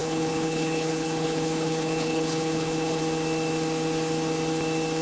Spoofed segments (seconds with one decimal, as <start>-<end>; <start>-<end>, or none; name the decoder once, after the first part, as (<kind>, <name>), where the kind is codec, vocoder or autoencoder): 0.0-3.0 (codec, HILCodec)